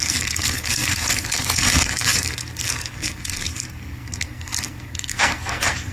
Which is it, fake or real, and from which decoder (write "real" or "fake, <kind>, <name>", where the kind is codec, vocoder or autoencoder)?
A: fake, codec, SNAC